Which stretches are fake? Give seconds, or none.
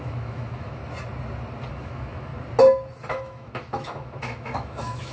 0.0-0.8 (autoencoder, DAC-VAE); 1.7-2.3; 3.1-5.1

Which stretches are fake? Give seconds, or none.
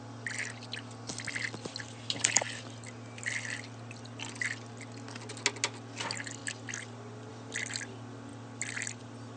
none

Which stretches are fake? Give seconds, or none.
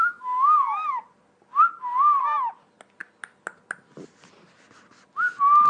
0.0-0.9 (autoencoder, DAC-VAE)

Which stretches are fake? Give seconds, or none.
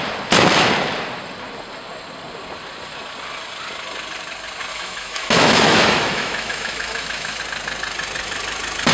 4.7-7.4 (autoencoder, DAC-VAE)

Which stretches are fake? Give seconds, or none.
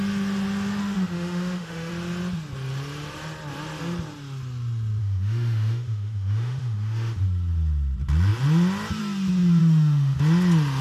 0.8-1.9 (autoencoder, DAC-VAE); 5.0-7.2; 9.6-10.2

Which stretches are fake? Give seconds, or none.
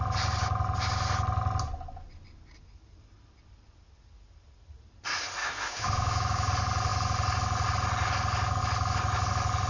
5.4-6.5 (autoencoder, DAC-VAE)